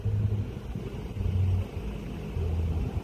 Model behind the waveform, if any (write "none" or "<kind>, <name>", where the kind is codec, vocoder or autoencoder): none